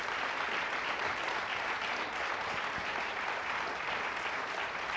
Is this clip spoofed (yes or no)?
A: yes